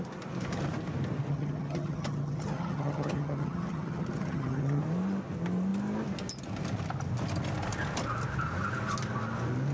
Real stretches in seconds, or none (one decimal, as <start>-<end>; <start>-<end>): 0.0-1.3; 4.8-9.7